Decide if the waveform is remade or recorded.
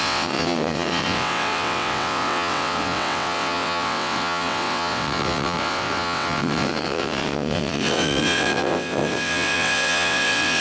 remade